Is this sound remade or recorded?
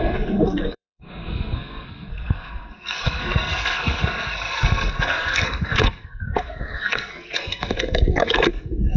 remade